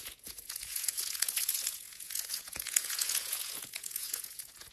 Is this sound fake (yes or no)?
yes